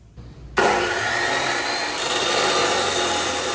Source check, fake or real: real